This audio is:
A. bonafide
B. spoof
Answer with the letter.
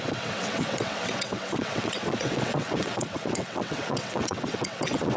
B